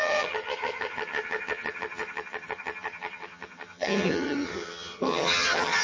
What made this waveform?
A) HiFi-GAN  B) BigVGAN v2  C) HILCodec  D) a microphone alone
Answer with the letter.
A